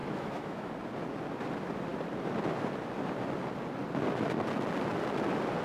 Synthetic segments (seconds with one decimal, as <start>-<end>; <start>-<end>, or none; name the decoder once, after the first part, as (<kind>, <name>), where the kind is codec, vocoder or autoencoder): 0.0-0.7 (autoencoder, DAC-VAE)